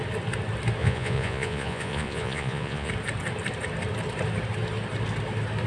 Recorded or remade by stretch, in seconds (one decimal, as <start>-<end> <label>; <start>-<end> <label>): 0.0-0.8 recorded; 0.8-2.9 remade; 2.9-5.7 recorded